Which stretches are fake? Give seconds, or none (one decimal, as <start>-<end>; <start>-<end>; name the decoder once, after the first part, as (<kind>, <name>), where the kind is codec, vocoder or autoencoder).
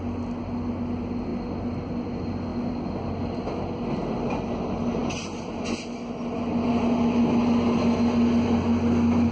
none